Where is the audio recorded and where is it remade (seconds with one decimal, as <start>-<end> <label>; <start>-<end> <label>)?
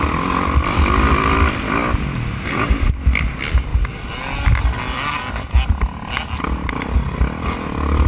0.0-8.1 recorded